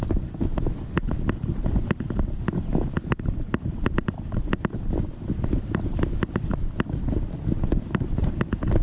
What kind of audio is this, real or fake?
real